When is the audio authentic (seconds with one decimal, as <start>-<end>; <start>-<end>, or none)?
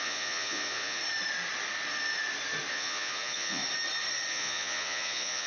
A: 1.0-2.7; 3.6-4.3